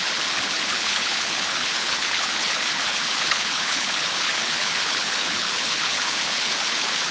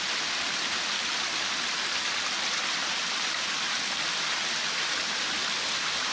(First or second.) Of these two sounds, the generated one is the first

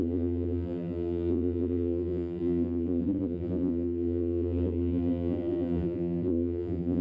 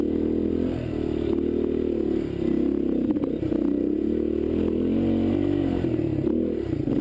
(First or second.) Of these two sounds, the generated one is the first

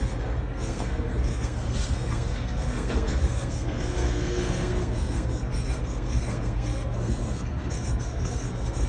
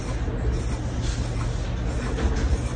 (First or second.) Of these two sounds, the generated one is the first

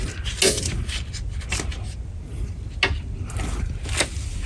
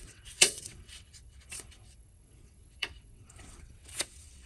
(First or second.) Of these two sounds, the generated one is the second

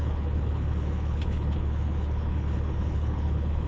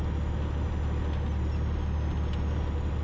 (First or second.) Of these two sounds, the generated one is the first